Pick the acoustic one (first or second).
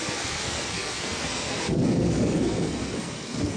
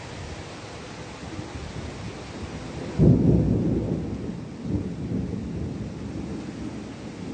second